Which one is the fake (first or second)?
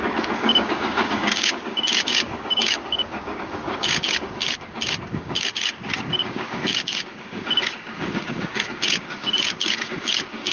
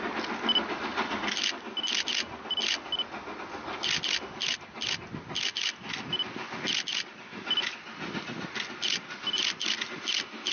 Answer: first